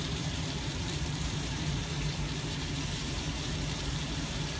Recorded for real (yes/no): no